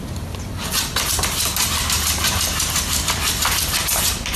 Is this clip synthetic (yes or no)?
no